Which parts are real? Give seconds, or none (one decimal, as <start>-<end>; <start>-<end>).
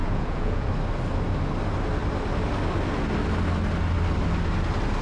0.7-5.0